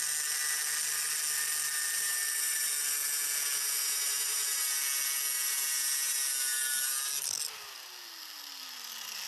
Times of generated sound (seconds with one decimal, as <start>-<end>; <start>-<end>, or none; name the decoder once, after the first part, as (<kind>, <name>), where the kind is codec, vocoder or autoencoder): 1.6-2.7 (vocoder, BigVGAN v2)